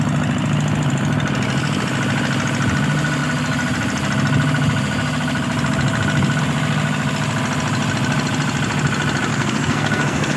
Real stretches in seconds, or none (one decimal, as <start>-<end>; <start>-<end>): 0.0-9.3